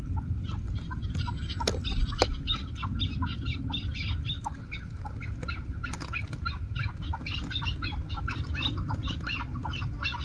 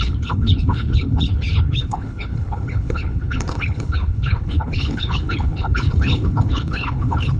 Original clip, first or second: first